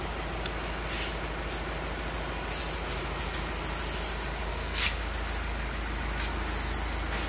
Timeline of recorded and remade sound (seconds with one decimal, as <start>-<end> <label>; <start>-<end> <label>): 0.0-4.5 recorded; 4.5-5.0 remade; 5.0-7.3 recorded